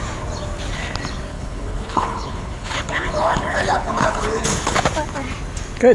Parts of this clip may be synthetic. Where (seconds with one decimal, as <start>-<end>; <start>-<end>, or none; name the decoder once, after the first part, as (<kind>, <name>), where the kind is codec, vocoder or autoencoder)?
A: 1.3-4.8 (codec, HILCodec)